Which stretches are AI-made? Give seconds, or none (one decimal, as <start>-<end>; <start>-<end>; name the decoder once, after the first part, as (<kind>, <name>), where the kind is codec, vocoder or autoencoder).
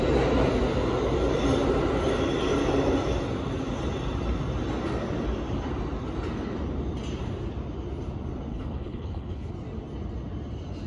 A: 8.5-9.5 (codec, HILCodec)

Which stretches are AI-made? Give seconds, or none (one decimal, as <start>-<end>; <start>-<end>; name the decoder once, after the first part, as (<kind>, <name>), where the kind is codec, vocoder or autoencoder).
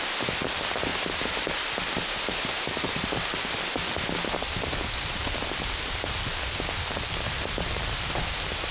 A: none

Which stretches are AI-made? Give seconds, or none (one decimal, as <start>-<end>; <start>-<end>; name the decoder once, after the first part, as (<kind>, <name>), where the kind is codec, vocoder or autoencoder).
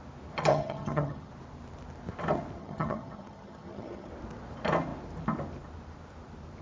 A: 0.5-1.3 (vocoder, HiFi-GAN); 2.6-4.1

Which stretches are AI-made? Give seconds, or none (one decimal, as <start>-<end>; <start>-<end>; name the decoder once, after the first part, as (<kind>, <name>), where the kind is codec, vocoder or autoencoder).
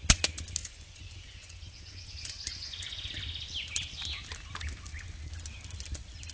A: 0.6-2.1 (vocoder, Vocos); 2.5-3.1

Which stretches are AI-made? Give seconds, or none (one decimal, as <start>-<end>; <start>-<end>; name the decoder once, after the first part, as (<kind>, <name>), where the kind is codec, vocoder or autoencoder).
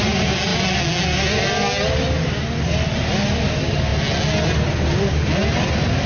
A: none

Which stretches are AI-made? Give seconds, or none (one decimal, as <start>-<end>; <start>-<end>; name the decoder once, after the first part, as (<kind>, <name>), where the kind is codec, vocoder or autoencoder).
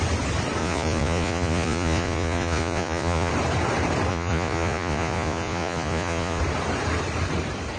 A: 0.6-3.3 (vocoder, Vocos); 4.1-6.4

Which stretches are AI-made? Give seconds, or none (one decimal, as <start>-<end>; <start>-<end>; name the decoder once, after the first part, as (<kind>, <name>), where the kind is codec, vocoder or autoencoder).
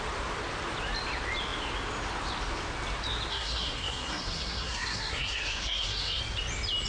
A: 3.3-6.2 (codec, SNAC)